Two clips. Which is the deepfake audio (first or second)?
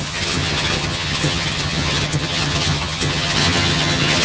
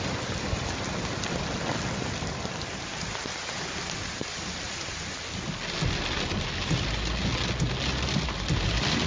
first